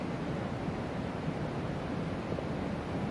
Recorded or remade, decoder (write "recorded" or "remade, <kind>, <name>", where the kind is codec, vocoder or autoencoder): recorded